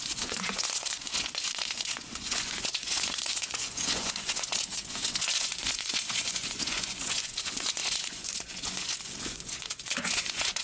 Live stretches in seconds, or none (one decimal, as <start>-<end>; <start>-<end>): none